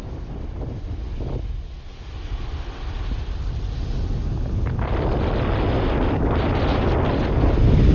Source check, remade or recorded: recorded